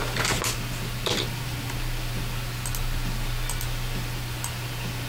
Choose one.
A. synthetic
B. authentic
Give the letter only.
B